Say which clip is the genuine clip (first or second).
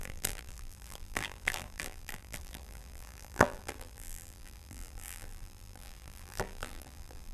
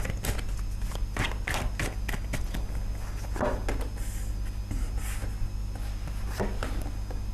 second